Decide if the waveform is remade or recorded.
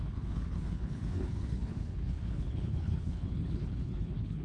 remade